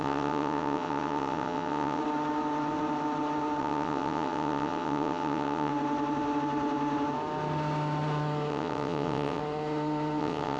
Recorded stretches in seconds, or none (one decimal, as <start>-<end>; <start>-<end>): 2.0-3.6; 5.7-8.5; 9.4-10.2